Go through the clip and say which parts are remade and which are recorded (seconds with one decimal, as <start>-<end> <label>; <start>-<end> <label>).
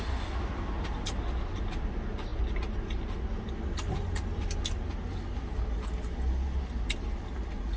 0.0-7.8 recorded